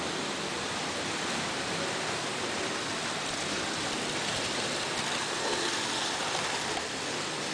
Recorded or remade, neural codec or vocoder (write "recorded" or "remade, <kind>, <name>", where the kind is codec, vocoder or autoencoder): remade, vocoder, BigVGAN v2